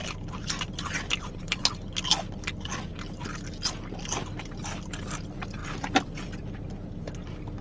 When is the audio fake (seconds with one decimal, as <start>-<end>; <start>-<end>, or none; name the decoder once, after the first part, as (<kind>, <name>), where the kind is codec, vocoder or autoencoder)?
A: 0.0-1.6 (vocoder, BigVGAN v2); 5.6-6.3

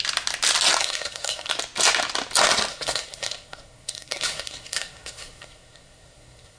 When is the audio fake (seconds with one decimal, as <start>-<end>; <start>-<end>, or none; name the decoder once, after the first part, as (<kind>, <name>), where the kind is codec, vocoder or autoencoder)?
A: 0.8-1.5 (codec, SNAC); 2.7-6.6

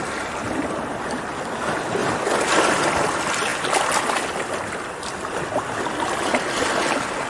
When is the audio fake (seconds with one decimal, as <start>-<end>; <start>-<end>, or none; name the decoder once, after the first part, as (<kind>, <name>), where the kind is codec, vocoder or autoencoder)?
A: none

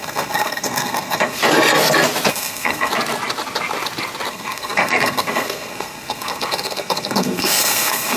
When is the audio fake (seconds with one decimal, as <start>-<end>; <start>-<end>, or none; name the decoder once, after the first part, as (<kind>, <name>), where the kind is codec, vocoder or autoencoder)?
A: 0.0-1.4 (codec, SNAC); 2.3-2.9; 4.3-8.2

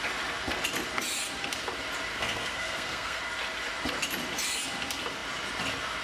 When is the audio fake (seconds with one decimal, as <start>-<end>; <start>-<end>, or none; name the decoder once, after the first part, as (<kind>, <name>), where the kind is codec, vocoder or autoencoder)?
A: 2.1-3.2 (codec, SNAC)

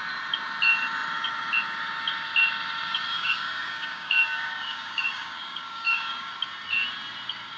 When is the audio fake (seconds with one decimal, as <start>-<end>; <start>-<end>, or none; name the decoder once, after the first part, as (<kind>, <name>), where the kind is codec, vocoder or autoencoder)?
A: 3.1-6.3 (codec, DAC)